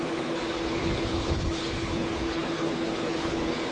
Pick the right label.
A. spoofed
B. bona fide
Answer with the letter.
A